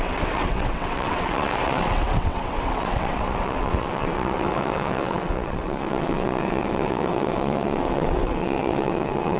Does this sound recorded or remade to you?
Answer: remade